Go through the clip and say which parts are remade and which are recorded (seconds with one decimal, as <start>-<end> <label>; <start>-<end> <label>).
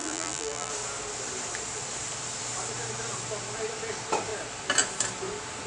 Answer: 0.0-0.7 remade; 0.7-5.7 recorded